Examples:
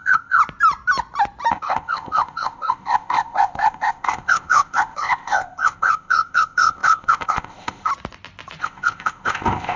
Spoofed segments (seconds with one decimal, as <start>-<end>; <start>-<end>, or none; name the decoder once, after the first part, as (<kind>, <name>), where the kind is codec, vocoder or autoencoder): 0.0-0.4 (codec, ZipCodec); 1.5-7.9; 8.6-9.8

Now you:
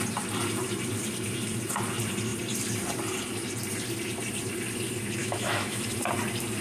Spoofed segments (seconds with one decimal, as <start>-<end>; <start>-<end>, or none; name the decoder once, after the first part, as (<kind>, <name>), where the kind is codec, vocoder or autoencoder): 5.2-5.8 (autoencoder, DAC-VAE)

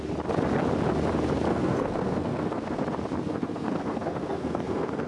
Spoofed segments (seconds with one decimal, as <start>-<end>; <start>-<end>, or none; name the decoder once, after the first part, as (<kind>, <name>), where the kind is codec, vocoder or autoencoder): 1.5-2.8 (codec, SNAC); 3.3-5.1